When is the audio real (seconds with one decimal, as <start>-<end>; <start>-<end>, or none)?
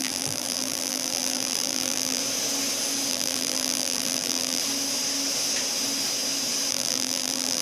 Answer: 2.2-3.1; 4.6-6.7